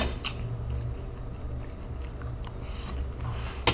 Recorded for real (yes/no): yes